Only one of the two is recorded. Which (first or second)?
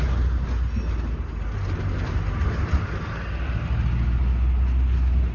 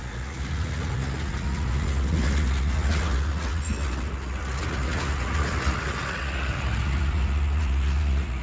first